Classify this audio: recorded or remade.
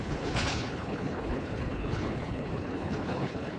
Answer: remade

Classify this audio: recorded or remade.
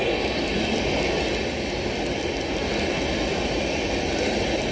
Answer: recorded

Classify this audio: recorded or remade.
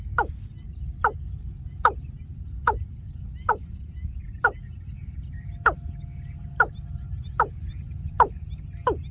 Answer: recorded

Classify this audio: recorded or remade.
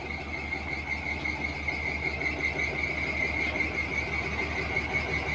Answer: recorded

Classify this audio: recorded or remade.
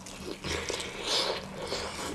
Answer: recorded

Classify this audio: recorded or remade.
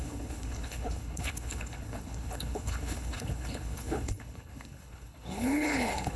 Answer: remade